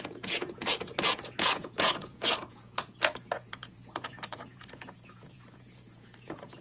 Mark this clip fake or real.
fake